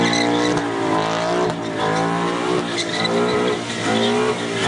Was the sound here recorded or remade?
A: recorded